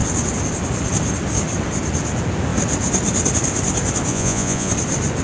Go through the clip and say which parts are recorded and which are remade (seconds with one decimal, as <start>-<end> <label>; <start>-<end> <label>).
0.0-4.1 recorded; 4.1-4.7 remade; 4.7-5.2 recorded

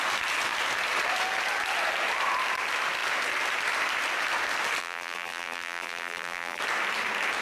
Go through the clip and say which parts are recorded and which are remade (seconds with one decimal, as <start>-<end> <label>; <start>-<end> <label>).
0.0-4.8 recorded; 4.8-6.6 remade; 6.6-7.4 recorded

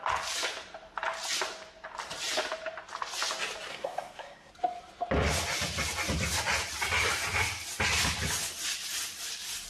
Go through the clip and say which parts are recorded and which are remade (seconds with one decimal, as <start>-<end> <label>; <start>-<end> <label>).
0.0-3.7 recorded; 3.7-4.5 remade; 4.5-9.7 recorded

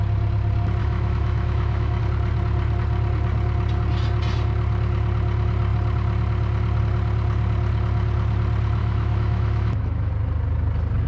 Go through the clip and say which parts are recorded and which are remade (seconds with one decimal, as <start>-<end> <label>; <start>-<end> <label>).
0.0-0.8 recorded; 0.8-2.0 remade; 2.0-8.8 recorded; 8.8-10.1 remade; 10.1-11.1 recorded

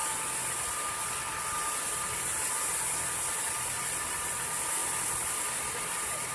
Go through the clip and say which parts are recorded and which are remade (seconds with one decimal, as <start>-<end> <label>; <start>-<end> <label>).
0.0-6.3 recorded

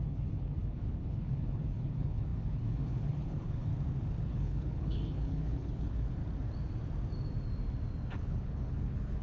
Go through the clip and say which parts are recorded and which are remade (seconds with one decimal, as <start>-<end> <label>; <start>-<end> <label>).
0.0-3.7 remade; 3.7-4.2 recorded; 4.2-6.2 remade; 6.2-8.2 recorded; 8.2-9.2 remade

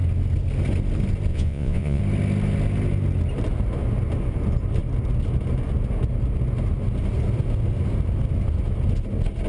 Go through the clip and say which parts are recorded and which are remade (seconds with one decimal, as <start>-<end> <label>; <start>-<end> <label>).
0.0-1.3 recorded; 1.3-2.0 remade; 2.0-9.5 recorded